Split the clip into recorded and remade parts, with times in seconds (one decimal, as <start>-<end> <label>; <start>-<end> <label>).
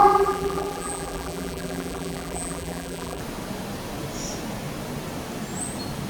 0.0-3.2 remade; 3.2-6.1 recorded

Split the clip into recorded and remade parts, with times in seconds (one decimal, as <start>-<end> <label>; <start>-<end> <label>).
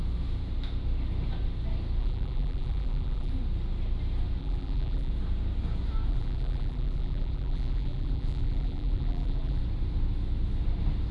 0.0-2.0 recorded; 2.0-3.3 remade; 3.3-4.4 recorded; 4.4-5.1 remade; 5.1-6.1 recorded; 6.1-9.6 remade; 9.6-11.1 recorded